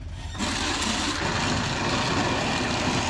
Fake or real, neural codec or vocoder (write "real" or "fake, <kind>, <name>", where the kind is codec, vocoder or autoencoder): real